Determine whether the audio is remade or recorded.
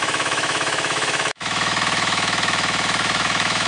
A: remade